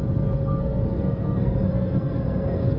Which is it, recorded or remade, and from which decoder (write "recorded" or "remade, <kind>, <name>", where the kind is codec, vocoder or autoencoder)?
remade, codec, SNAC